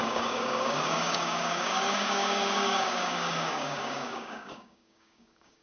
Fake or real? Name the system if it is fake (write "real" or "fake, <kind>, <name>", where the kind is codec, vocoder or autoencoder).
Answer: fake, codec, DAC